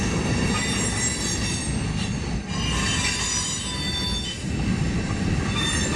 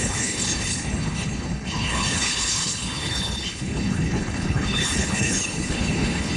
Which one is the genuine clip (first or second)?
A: first